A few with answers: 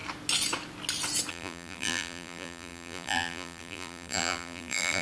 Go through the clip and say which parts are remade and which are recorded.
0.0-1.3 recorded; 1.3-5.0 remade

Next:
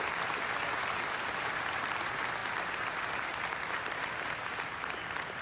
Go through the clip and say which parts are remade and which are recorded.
0.0-5.4 recorded